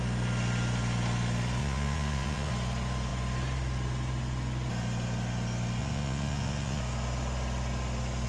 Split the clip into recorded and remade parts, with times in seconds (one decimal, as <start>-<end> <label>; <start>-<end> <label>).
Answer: 0.0-1.6 recorded; 1.6-2.5 remade; 2.5-5.8 recorded; 5.8-6.8 remade; 6.8-8.3 recorded